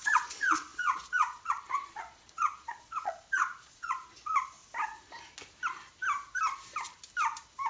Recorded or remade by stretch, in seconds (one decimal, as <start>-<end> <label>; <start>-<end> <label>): 0.0-4.6 remade; 4.6-7.7 recorded